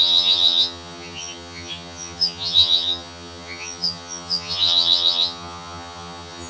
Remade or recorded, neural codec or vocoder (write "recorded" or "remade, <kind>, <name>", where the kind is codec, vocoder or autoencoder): remade, vocoder, HiFi-GAN